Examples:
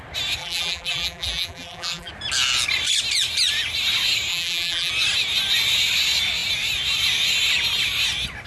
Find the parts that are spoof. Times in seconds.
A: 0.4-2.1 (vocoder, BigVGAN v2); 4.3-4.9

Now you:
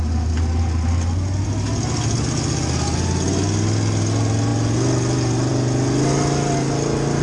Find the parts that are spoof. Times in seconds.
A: none

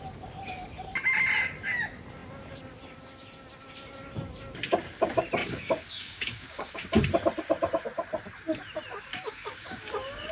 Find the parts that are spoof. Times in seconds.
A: 5.4-6.9 (codec, DAC); 9.1-10.3

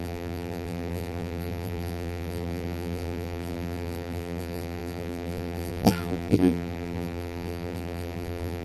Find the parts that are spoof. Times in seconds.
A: 0.0-8.6 (vocoder, BigVGAN v2)

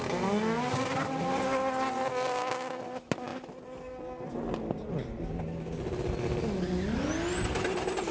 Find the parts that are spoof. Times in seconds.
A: none